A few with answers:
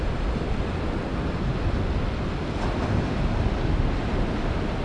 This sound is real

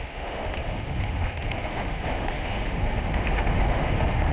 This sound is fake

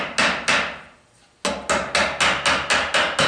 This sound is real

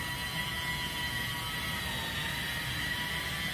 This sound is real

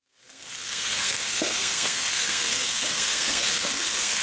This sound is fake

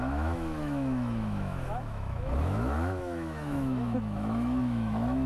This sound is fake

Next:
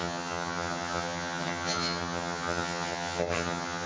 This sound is fake